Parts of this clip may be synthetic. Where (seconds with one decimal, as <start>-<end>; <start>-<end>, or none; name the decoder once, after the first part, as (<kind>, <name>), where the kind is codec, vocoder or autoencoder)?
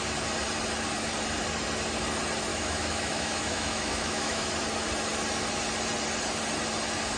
2.5-4.5 (autoencoder, DAC-VAE)